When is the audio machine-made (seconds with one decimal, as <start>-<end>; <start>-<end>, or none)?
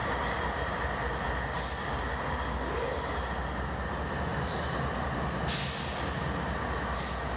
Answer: none